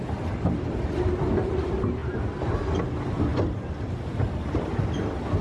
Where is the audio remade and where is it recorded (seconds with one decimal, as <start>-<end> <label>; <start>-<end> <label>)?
0.0-2.0 recorded; 2.0-2.8 remade; 2.8-3.3 recorded; 3.3-4.0 remade; 4.0-5.4 recorded